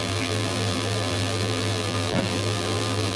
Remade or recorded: remade